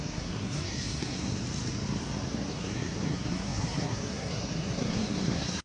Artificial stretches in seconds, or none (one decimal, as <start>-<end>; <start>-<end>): 0.0-1.4; 2.5-5.6

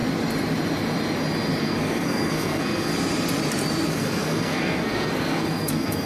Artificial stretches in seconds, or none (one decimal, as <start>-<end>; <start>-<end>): 1.6-2.9; 3.9-6.1

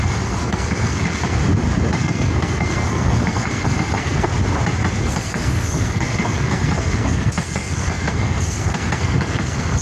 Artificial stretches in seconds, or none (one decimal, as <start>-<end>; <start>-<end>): 0.0-1.4; 2.0-4.3; 5.0-9.8

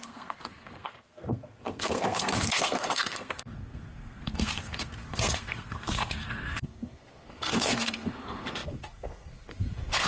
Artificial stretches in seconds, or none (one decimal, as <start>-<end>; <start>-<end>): 0.0-10.1

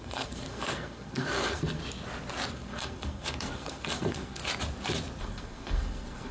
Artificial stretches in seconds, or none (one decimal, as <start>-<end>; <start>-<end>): 0.0-1.8; 2.5-4.4; 5.2-6.3